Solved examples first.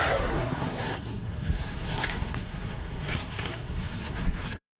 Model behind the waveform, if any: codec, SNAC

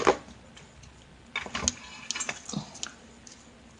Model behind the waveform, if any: none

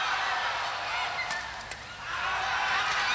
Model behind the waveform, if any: none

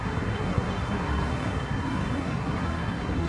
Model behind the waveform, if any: codec, SNAC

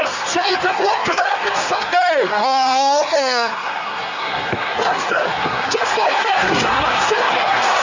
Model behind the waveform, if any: codec, SNAC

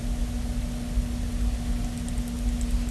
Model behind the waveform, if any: none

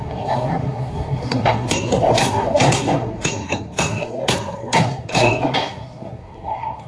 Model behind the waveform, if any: codec, SNAC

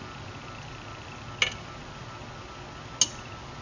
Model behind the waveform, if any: none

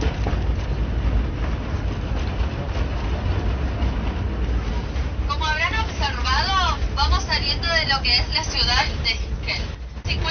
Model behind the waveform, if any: none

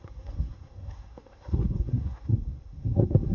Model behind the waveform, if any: codec, SNAC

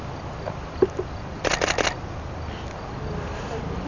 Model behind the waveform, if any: none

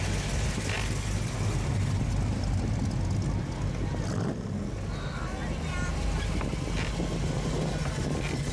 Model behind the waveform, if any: none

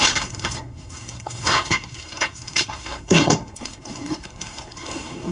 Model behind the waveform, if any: codec, SNAC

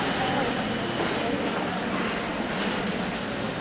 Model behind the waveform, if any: none